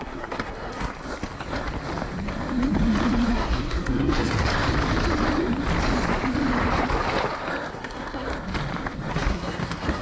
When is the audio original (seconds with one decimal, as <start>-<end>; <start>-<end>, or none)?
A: 0.9-3.3; 4.4-7.7; 8.3-9.1